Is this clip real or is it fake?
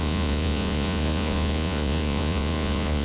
fake